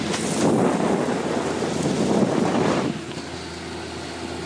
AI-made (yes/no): no